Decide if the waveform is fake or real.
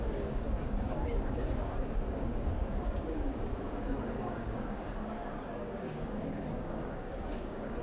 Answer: fake